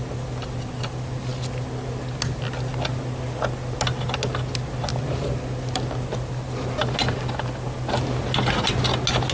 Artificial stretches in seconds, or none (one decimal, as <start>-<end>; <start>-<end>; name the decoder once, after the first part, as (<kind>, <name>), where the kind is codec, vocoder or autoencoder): none